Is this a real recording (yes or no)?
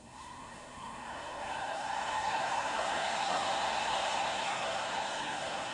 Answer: no